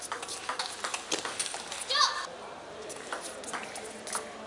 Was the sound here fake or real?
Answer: real